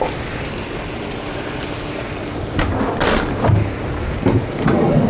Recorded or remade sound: recorded